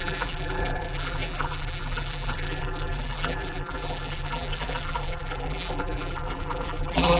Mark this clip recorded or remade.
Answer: remade